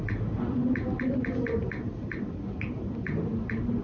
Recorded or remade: recorded